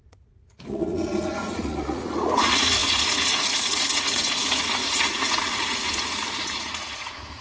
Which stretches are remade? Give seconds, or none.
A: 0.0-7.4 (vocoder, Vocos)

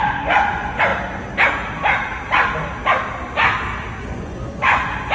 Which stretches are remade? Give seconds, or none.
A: 0.0-0.9 (vocoder, Vocos); 4.0-5.1

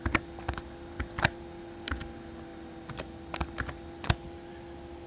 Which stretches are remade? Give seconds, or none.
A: none

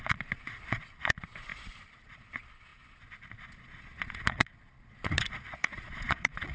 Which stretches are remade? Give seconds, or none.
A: 0.0-6.5 (vocoder, Vocos)